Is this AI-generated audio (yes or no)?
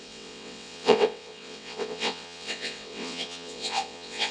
yes